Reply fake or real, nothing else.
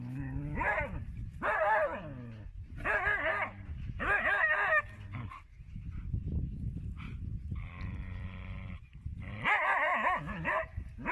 real